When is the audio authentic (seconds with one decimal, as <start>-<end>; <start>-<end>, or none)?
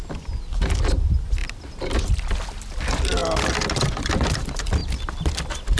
0.0-5.8